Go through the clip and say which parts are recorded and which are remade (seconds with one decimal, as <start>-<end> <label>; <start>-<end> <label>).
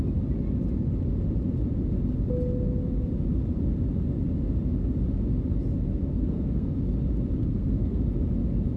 0.0-6.1 recorded; 6.1-6.7 remade; 6.7-7.4 recorded; 7.4-8.0 remade; 8.0-8.8 recorded